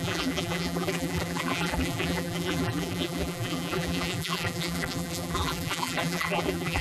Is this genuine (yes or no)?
no